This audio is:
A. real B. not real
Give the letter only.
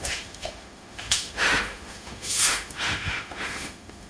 B